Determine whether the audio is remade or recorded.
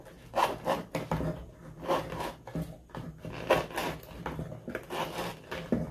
recorded